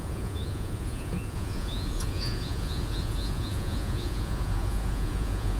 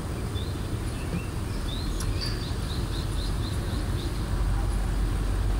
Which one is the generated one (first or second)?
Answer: first